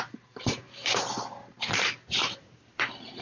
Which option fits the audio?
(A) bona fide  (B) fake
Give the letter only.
B